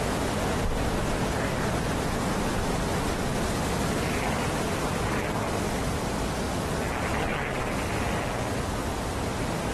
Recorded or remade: recorded